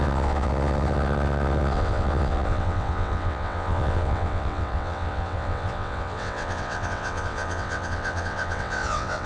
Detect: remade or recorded remade